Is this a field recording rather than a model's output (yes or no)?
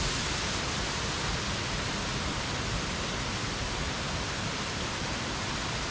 yes